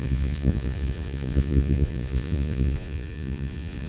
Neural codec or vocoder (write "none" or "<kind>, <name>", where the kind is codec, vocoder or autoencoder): vocoder, Vocos